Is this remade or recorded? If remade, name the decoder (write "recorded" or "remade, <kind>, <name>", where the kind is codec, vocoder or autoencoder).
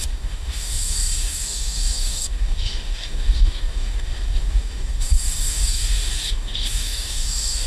remade, codec, DAC